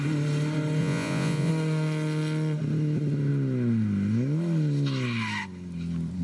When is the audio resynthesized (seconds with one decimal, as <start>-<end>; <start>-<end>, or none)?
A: 0.8-1.5

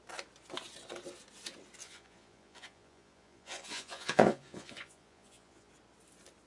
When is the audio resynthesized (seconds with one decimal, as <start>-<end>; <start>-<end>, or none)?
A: 1.8-5.7